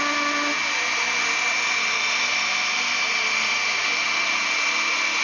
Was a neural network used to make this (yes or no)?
no